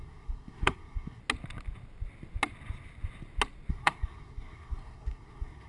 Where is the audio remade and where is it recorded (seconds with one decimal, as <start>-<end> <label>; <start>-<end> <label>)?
0.0-1.2 remade; 1.2-3.7 recorded; 3.7-5.7 remade